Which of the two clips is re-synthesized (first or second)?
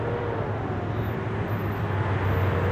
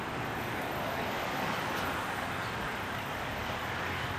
second